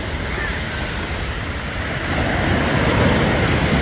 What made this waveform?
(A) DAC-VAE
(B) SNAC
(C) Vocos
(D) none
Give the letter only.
D